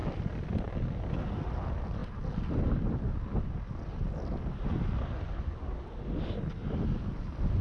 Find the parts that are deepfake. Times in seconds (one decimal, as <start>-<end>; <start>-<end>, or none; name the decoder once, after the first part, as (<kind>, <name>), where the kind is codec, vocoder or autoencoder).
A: none